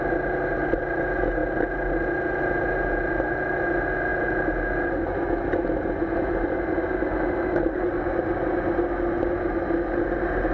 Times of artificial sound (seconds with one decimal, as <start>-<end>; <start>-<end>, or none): none